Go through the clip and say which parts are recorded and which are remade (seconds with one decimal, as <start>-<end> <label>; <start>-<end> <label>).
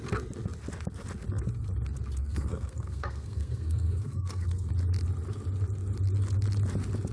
0.0-2.2 recorded; 2.2-4.7 remade; 4.7-7.1 recorded